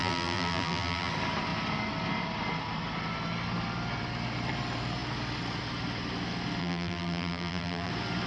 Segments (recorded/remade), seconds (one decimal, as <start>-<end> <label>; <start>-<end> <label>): 0.0-1.1 remade; 1.1-6.6 recorded; 6.6-7.9 remade; 7.9-8.3 recorded